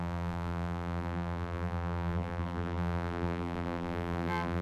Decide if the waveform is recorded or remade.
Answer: remade